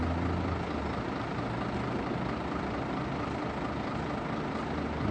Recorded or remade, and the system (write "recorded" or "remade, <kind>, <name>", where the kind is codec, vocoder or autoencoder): recorded